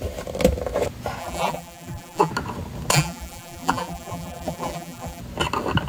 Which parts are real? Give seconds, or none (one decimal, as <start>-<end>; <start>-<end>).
0.0-1.2; 2.3-2.9; 5.2-5.9